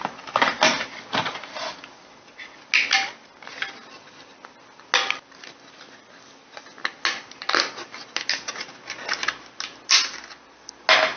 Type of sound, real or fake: real